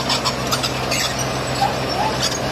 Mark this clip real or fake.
real